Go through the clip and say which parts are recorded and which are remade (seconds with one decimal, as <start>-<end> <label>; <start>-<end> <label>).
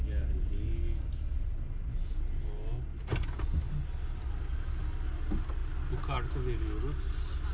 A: 0.0-7.5 recorded